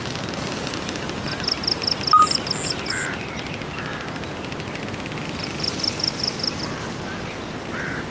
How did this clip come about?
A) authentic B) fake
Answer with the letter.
A